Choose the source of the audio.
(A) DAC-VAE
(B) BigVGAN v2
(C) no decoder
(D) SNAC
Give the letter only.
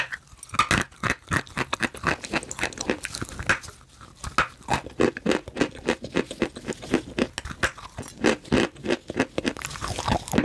C